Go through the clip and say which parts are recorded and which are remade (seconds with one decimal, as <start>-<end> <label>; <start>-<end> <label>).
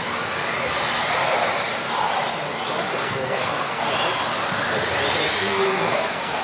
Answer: 0.0-3.0 recorded; 3.0-3.8 remade; 3.8-5.4 recorded; 5.4-6.4 remade